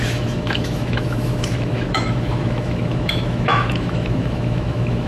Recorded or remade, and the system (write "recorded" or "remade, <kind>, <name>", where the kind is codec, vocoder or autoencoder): remade, autoencoder, DAC-VAE